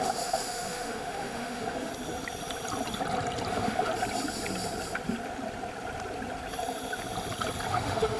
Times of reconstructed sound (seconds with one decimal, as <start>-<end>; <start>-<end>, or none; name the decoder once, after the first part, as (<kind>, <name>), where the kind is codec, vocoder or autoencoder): 0.0-1.9 (autoencoder, DAC-VAE); 3.5-3.9; 7.7-8.2